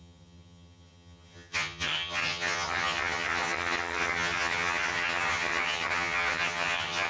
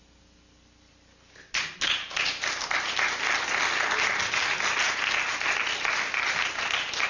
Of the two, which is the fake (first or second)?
first